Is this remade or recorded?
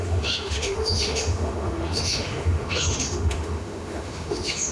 remade